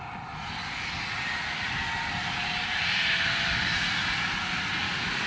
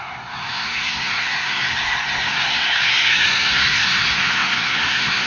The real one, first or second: first